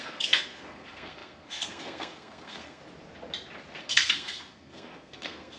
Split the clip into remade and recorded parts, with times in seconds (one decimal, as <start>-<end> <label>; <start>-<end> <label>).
0.0-2.8 remade; 2.8-3.8 recorded; 3.8-5.6 remade